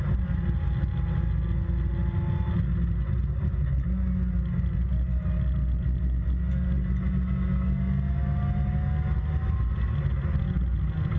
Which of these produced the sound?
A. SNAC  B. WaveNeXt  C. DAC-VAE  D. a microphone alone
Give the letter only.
D